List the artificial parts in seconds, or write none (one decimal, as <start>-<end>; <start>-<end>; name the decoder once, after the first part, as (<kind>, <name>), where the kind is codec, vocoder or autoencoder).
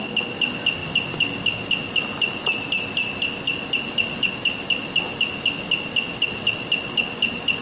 none